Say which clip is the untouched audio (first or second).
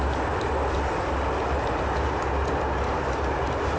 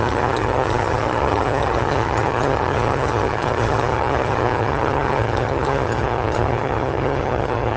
first